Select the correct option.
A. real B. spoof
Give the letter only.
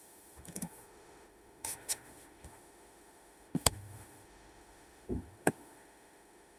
B